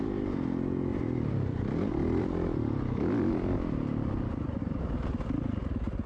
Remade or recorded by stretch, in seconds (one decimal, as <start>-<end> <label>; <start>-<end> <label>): 0.0-0.9 recorded; 0.9-4.6 remade; 4.6-6.1 recorded